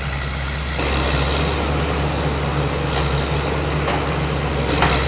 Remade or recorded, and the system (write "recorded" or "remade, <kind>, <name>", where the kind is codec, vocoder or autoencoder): recorded